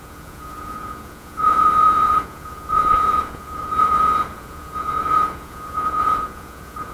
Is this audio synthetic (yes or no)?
yes